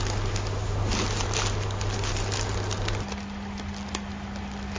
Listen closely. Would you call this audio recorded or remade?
recorded